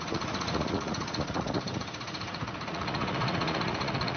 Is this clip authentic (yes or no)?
no